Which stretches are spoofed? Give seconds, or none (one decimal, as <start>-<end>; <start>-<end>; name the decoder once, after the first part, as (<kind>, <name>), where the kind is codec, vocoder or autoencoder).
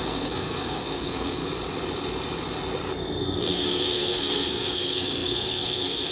0.0-1.4 (codec, SNAC); 3.2-6.1